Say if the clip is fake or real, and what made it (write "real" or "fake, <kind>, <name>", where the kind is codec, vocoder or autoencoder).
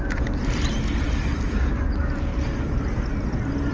real